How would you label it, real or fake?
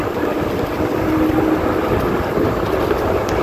real